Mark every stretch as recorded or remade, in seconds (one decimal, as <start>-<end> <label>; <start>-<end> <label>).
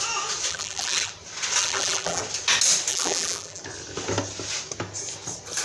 0.0-0.5 recorded; 0.5-1.1 remade; 1.1-1.6 recorded; 1.6-2.2 remade; 2.2-2.9 recorded; 2.9-3.6 remade; 3.6-5.6 recorded